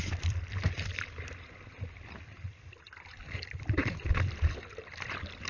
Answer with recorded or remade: remade